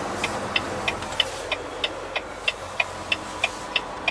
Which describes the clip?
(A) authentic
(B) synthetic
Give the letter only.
A